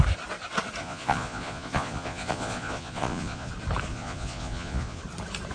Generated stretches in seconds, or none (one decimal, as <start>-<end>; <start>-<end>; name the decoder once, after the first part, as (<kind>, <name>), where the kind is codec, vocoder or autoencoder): 0.8-3.5 (vocoder, Vocos); 3.9-5.0